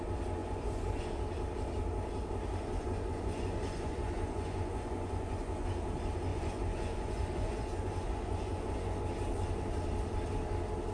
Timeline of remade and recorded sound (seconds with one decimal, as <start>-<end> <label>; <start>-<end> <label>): 0.0-0.4 recorded; 0.4-1.1 remade; 1.1-2.6 recorded; 2.6-5.7 remade; 5.7-6.3 recorded; 6.3-9.0 remade; 9.0-10.9 recorded